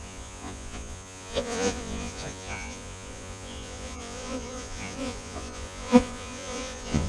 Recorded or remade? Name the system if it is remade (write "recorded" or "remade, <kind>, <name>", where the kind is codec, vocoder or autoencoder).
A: remade, vocoder, Vocos